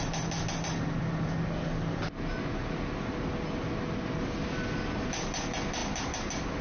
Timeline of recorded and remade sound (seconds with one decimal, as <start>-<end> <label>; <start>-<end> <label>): 0.0-6.6 recorded